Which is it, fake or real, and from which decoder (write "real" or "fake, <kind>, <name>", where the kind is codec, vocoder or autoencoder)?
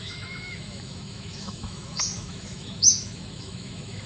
fake, autoencoder, DAC-VAE